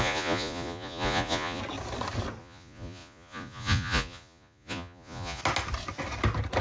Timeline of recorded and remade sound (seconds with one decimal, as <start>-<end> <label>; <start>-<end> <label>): 0.0-1.6 remade; 1.6-2.4 recorded; 2.4-5.4 remade; 5.4-6.6 recorded